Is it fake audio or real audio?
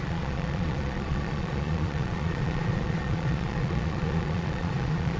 fake